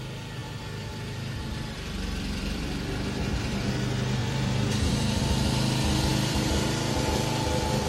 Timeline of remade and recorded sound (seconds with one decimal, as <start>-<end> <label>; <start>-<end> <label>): 0.0-0.4 recorded; 0.4-3.7 remade; 3.7-4.2 recorded; 4.2-5.2 remade; 5.2-6.1 recorded; 6.1-6.9 remade; 6.9-7.9 recorded